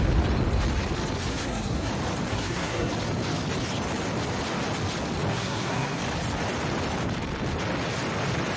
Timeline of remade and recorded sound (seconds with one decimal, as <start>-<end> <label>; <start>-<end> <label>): 0.0-1.3 recorded; 1.3-1.9 remade; 1.9-2.3 recorded; 2.3-2.9 remade; 2.9-5.3 recorded; 5.3-6.0 remade; 6.0-8.6 recorded

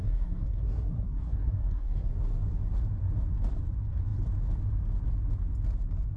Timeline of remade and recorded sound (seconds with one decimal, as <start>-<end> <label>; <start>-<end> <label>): 0.0-2.1 remade; 2.1-6.2 recorded

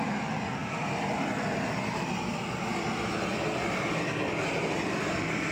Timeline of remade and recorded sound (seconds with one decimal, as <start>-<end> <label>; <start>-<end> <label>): 0.0-5.5 recorded

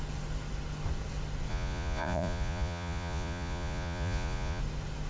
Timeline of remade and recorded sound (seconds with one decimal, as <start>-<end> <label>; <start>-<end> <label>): 0.0-1.5 recorded; 1.5-4.6 remade; 4.6-5.1 recorded